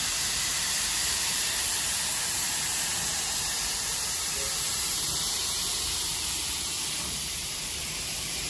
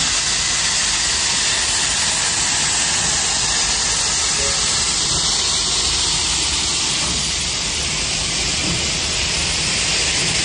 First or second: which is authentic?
second